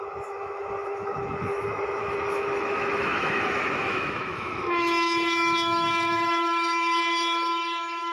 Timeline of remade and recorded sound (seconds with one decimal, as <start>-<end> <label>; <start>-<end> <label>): 0.0-8.1 remade